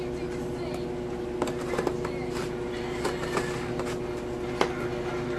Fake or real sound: real